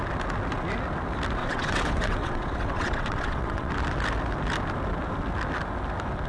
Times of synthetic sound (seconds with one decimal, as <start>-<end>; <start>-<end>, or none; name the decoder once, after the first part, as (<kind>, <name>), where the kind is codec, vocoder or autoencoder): 1.4-3.7 (vocoder, WaveNeXt)